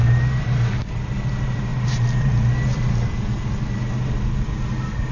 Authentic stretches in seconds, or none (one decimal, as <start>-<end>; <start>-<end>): 0.0-5.1